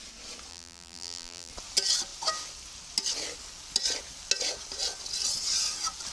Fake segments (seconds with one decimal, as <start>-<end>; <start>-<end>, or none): 0.5-1.5